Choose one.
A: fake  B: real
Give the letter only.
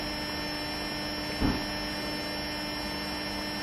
B